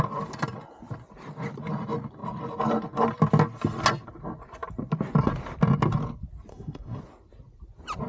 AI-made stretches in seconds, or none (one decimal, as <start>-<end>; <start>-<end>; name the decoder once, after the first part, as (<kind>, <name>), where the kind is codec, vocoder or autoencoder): 6.5-7.0 (codec, SNAC)